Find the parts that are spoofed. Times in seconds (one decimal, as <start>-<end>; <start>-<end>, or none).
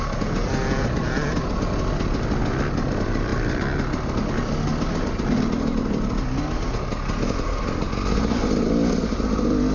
none